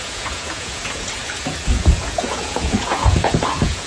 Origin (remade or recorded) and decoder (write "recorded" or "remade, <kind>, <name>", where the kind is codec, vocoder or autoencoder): remade, vocoder, Vocos